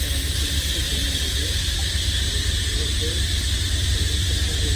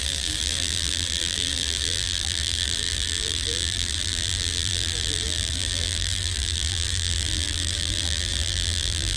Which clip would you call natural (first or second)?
first